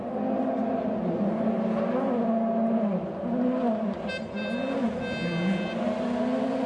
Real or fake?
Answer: real